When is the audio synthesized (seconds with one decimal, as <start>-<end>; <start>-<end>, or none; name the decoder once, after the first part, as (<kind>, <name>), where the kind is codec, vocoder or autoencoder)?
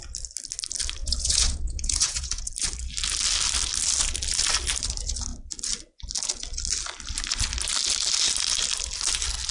1.0-2.5 (vocoder, Vocos)